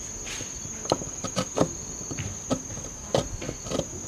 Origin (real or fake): real